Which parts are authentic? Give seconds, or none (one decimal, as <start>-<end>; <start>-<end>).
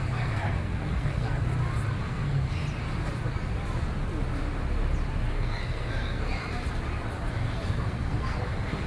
1.5-2.0; 2.6-5.3; 6.4-7.3